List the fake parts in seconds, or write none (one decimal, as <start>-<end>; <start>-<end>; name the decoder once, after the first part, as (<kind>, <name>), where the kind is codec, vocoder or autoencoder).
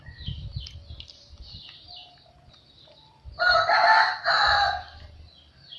none